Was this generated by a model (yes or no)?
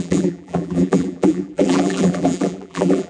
yes